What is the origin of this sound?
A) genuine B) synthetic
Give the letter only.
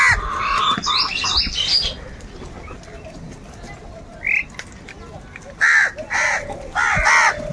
A